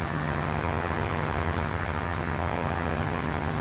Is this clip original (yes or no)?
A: no